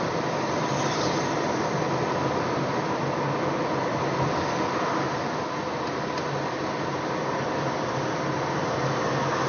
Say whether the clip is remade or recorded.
recorded